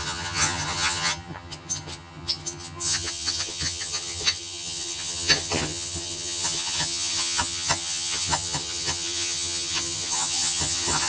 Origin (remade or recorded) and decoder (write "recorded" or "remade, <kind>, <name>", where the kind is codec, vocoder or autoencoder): remade, vocoder, HiFi-GAN